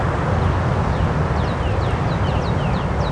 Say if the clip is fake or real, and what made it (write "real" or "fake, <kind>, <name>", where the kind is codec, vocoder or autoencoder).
real